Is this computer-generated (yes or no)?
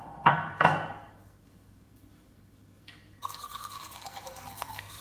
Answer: yes